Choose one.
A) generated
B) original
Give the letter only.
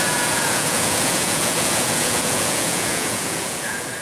A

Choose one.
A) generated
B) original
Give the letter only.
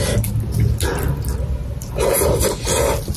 B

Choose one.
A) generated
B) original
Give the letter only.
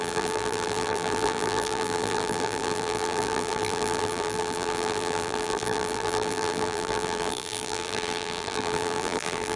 A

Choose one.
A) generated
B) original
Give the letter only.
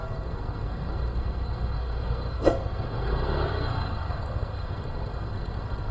A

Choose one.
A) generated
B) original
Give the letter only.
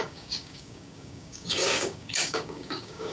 A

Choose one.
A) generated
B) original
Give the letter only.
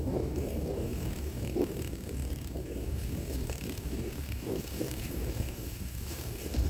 A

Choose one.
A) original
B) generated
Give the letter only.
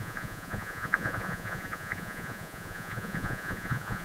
B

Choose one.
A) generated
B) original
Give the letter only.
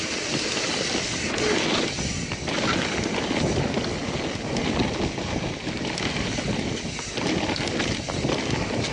B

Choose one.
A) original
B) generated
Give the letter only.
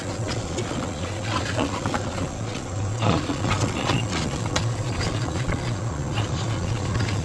B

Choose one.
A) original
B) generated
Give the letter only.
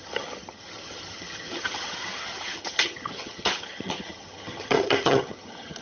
B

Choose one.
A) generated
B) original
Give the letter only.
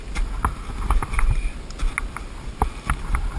B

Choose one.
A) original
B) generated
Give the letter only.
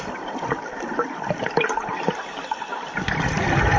B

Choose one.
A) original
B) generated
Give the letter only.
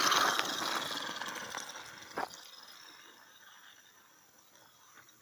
A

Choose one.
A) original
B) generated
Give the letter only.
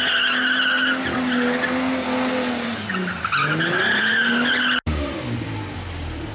A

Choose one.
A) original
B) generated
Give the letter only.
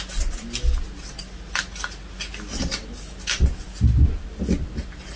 A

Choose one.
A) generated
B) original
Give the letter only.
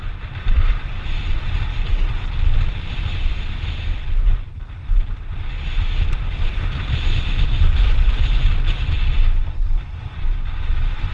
B